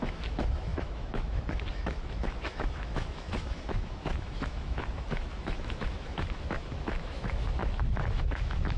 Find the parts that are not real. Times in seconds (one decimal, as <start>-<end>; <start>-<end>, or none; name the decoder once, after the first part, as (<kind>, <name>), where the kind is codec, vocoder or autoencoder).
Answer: 0.0-8.8 (autoencoder, DAC-VAE)